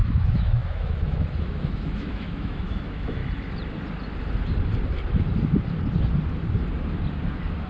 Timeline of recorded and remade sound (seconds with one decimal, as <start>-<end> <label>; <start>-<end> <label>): 0.0-3.2 remade; 3.2-7.7 recorded